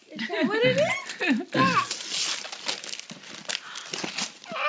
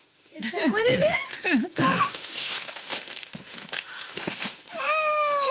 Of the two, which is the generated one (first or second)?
second